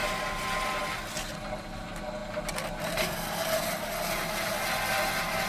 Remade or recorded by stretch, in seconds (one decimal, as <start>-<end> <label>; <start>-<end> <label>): 0.0-5.5 recorded